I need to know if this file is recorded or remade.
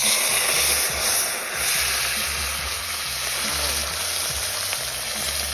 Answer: recorded